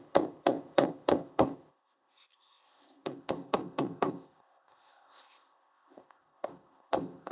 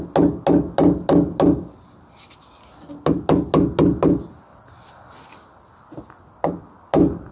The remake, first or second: first